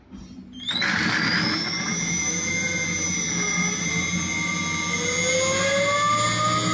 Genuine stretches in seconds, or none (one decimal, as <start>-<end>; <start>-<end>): 0.0-6.7